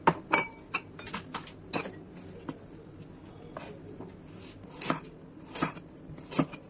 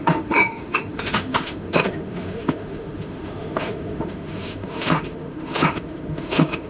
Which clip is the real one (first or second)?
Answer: first